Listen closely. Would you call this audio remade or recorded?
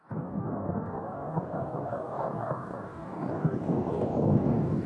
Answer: remade